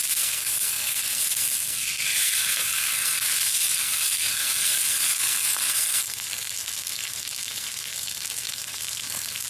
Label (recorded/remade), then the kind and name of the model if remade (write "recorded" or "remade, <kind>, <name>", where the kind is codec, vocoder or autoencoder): remade, codec, SNAC